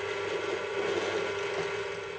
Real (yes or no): yes